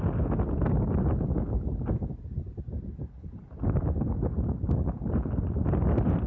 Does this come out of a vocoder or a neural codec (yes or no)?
no